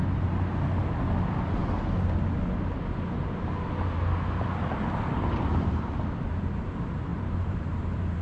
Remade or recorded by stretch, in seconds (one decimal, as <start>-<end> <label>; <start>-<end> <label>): 0.0-7.1 recorded; 7.1-8.2 remade